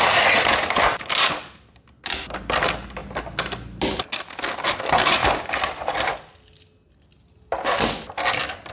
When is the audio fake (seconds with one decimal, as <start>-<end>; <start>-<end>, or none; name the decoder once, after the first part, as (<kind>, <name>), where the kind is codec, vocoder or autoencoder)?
none